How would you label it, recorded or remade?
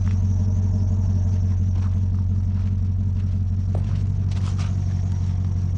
recorded